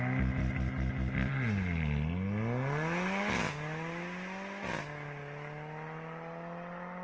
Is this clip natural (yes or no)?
yes